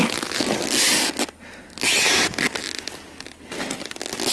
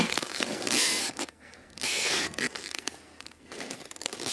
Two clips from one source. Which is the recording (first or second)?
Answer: first